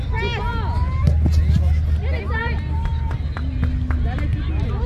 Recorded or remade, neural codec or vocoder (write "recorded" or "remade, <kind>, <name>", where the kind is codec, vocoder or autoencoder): recorded